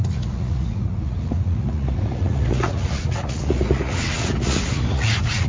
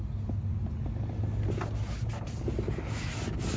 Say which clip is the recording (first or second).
second